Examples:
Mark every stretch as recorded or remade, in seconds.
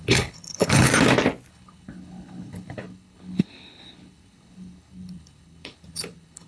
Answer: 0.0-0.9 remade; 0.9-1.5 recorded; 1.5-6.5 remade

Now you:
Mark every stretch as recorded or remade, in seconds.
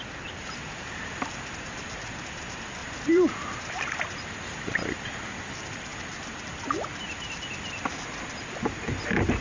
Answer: 0.0-2.8 recorded; 2.8-3.8 remade; 3.8-9.4 recorded